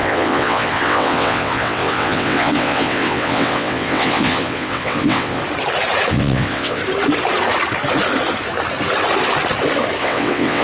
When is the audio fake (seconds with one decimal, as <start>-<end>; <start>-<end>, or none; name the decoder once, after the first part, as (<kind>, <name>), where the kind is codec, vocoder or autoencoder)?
0.0-5.4 (vocoder, WaveNeXt); 6.1-6.8; 10.0-10.6